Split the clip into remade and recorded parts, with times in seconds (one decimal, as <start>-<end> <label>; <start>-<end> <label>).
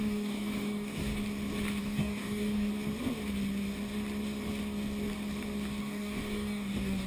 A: 0.0-1.1 remade; 1.1-1.8 recorded; 1.8-2.7 remade; 2.7-5.8 recorded; 5.8-7.1 remade